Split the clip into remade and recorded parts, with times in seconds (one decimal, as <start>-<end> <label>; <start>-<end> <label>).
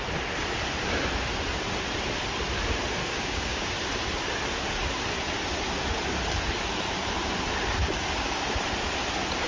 0.0-3.0 recorded; 3.0-3.7 remade; 3.7-9.5 recorded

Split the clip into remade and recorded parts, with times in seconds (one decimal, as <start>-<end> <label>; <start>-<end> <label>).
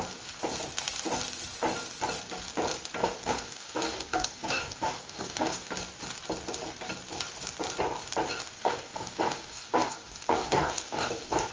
0.0-3.0 recorded; 3.0-5.7 remade; 5.7-8.6 recorded; 8.6-11.5 remade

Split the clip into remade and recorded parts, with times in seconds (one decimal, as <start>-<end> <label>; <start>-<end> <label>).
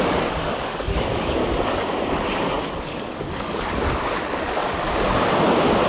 0.0-1.4 remade; 1.4-2.8 recorded; 2.8-4.6 remade; 4.6-5.9 recorded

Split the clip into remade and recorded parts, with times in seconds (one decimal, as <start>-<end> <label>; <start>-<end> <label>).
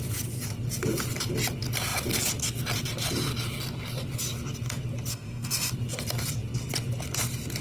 0.0-5.1 recorded; 5.1-5.7 remade; 5.7-7.6 recorded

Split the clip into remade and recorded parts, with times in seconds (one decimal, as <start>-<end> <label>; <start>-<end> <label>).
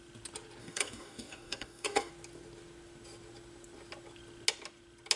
0.0-0.6 recorded; 0.6-2.1 remade; 2.1-5.2 recorded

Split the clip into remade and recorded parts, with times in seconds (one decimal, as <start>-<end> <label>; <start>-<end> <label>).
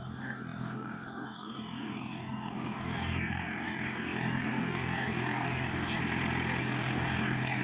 0.0-6.0 remade; 6.0-6.6 recorded; 6.6-7.6 remade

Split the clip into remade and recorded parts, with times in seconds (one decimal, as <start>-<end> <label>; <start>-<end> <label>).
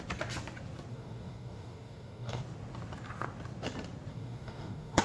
0.0-0.9 recorded; 0.9-2.4 remade; 2.4-4.1 recorded; 4.1-5.0 remade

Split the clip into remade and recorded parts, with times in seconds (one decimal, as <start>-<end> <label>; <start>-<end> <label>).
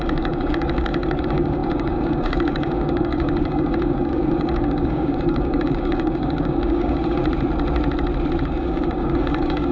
0.0-7.2 remade; 7.2-8.4 recorded; 8.4-9.7 remade